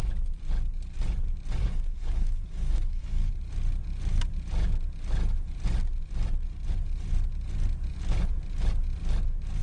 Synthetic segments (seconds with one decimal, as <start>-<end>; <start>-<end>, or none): 1.6-3.3